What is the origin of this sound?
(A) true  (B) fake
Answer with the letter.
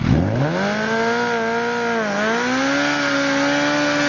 A